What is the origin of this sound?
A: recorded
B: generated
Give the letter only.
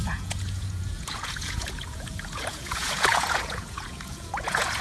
B